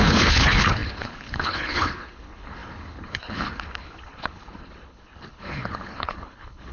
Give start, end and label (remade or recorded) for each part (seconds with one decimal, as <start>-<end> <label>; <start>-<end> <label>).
0.0-6.7 remade